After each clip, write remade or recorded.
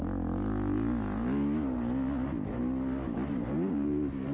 recorded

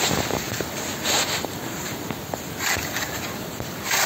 recorded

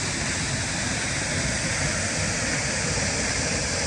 recorded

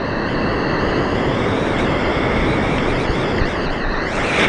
recorded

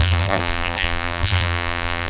remade